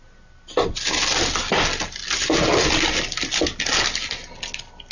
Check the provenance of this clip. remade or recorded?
recorded